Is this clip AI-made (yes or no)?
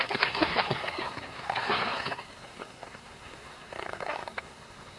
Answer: yes